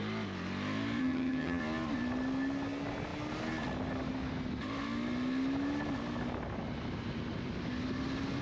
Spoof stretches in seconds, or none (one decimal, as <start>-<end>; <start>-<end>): 1.0-1.6